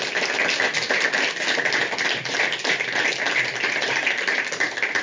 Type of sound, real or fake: real